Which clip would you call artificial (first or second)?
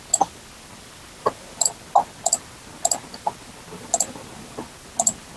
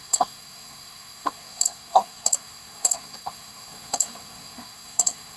second